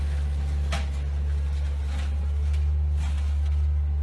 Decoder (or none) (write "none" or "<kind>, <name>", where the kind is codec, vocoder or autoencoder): none